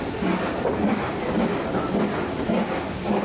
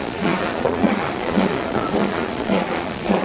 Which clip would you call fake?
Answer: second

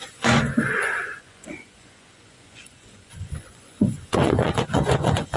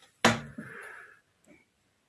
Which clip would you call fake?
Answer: first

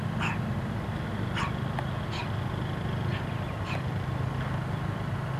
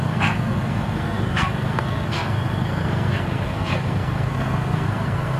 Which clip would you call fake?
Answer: second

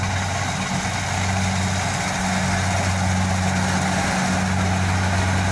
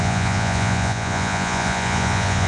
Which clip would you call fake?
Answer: second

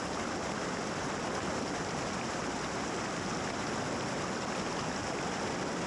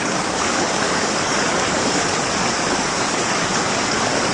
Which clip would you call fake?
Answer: second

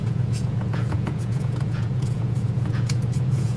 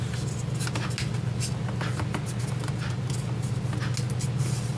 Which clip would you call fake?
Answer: first